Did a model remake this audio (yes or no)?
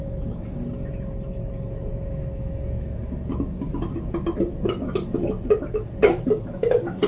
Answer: yes